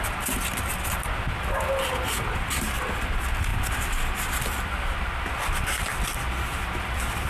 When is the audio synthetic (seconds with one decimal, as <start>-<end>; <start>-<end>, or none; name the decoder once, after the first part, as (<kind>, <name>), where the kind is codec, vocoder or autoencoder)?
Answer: 3.5-5.3 (vocoder, BigVGAN v2); 6.5-7.3